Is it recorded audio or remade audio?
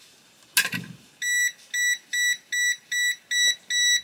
recorded